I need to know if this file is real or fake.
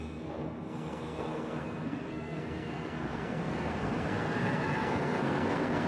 fake